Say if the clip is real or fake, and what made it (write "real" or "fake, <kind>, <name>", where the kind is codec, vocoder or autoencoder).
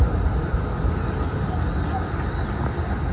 real